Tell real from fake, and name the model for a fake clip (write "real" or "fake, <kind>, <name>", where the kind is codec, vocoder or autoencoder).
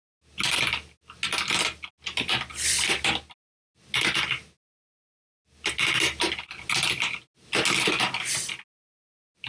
real